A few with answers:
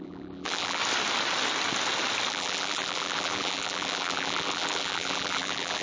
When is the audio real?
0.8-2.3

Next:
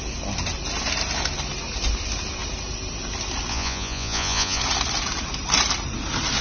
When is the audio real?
0.0-3.5; 4.6-6.4

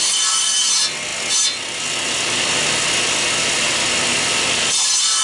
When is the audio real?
0.0-5.2

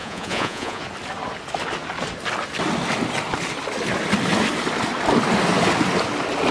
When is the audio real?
0.8-6.5

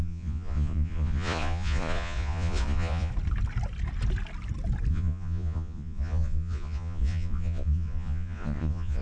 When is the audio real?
3.1-4.9

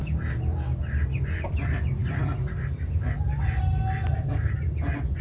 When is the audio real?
0.0-5.2

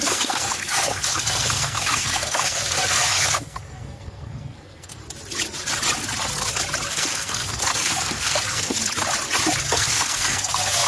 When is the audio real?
5.0-6.9; 8.8-9.6

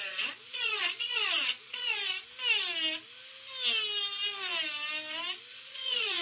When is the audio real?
2.0-5.5